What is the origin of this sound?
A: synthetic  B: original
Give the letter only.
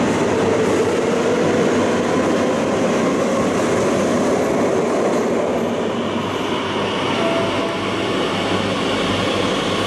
B